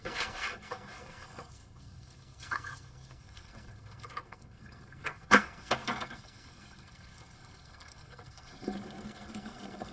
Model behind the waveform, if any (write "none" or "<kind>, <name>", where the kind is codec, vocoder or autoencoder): codec, SNAC